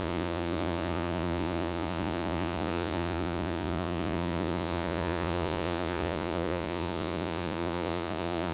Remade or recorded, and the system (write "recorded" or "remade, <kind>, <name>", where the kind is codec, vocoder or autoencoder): remade, vocoder, Vocos